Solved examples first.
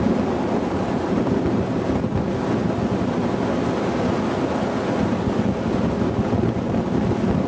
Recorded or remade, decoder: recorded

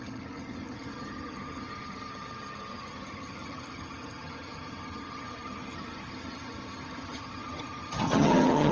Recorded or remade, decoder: remade, vocoder, HiFi-GAN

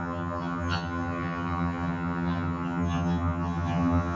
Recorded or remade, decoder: remade, vocoder, HiFi-GAN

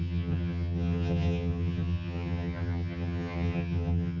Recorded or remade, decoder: remade, vocoder, HiFi-GAN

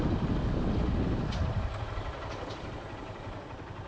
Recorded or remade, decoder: recorded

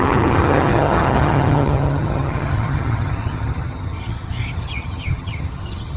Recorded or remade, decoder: remade, vocoder, HiFi-GAN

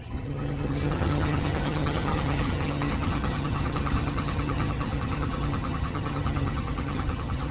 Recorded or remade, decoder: remade, vocoder, HiFi-GAN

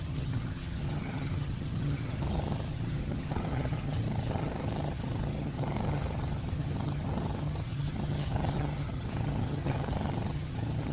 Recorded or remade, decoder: remade, vocoder, HiFi-GAN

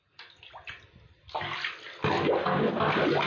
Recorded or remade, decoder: recorded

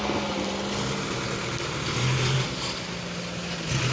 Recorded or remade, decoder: recorded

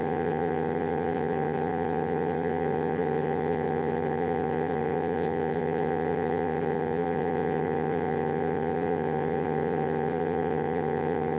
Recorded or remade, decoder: remade, vocoder, HiFi-GAN